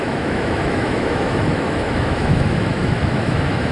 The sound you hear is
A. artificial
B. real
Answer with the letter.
A